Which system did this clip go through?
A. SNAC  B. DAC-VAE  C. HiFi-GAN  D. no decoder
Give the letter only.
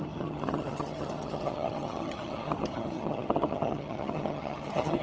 C